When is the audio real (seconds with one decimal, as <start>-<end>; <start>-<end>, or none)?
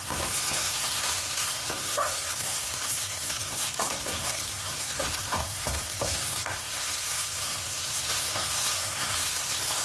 none